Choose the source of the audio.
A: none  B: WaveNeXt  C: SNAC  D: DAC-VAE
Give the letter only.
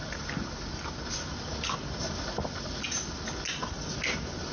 A